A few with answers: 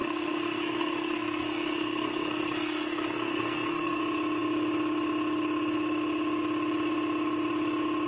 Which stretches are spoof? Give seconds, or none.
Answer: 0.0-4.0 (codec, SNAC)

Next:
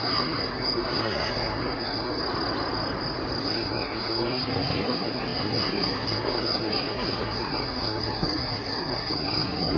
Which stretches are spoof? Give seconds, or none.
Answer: 0.0-2.2 (codec, SNAC); 3.4-9.8

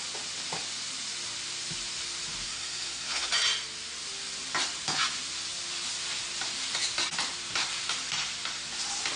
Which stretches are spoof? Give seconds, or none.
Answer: 2.5-3.3 (codec, SNAC)

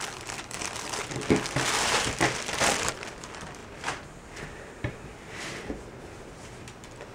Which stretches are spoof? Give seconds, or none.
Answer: none

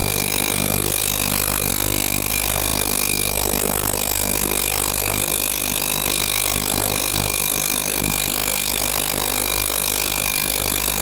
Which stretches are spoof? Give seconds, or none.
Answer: 0.0-1.7 (codec, SNAC); 2.3-11.0